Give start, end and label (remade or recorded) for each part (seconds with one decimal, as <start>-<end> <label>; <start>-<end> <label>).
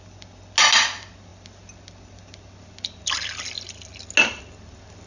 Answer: 0.0-5.1 recorded